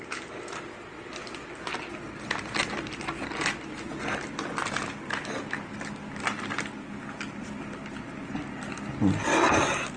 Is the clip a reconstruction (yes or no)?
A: no